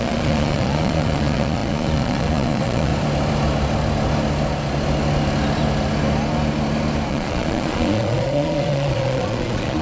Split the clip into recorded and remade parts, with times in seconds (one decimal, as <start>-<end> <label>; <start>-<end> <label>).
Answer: 0.0-2.9 remade; 2.9-7.1 recorded; 7.1-9.8 remade